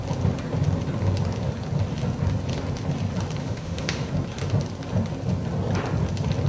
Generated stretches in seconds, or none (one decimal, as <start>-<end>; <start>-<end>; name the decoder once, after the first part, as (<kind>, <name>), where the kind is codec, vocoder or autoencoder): 3.4-4.1 (autoencoder, DAC-VAE)